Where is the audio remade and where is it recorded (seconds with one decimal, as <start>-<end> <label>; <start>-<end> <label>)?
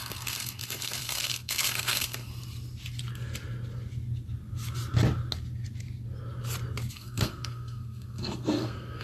0.0-2.3 remade; 2.3-6.9 recorded; 6.9-9.0 remade